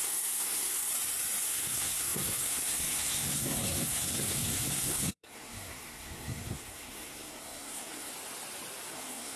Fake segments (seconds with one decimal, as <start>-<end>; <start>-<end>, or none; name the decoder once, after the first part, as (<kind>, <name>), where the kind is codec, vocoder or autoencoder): 0.0-0.9 (codec, SNAC); 1.4-8.1; 8.9-9.4